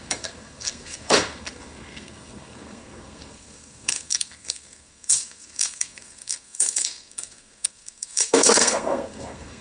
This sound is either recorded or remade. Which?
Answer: remade